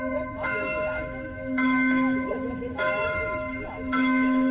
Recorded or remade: remade